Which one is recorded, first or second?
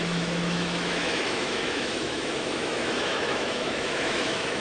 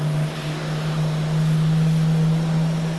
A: second